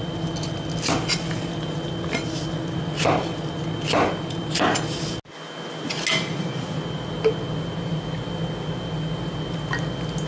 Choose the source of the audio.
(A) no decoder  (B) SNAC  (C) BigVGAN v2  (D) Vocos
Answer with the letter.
A